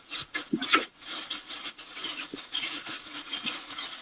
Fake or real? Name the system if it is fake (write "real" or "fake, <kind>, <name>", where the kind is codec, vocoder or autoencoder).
fake, vocoder, Vocos